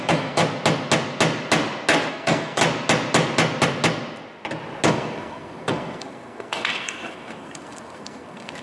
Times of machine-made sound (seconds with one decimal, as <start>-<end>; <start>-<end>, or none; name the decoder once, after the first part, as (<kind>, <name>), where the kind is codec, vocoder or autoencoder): 0.0-0.4 (codec, SNAC); 2.1-2.6; 4.9-8.6